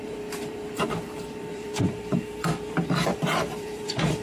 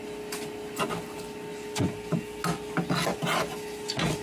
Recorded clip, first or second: second